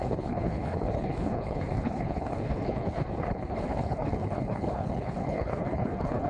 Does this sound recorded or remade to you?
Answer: remade